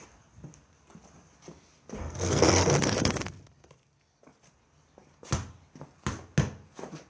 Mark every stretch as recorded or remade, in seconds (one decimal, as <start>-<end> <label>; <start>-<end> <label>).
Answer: 0.0-2.0 recorded; 2.0-2.7 remade; 2.7-7.1 recorded